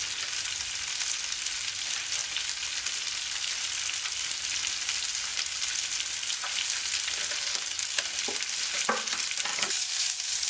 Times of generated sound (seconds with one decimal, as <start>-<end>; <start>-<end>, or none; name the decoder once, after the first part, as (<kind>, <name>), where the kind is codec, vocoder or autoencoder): 7.5-8.0 (codec, DAC); 9.5-10.5